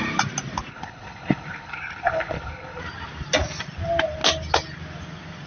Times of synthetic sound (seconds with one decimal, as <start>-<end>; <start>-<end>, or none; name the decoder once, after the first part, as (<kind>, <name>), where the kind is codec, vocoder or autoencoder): 0.7-2.8 (codec, HILCodec)